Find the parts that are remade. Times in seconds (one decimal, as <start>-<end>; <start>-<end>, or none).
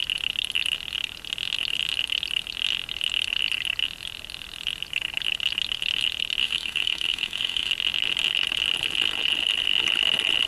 6.4-7.7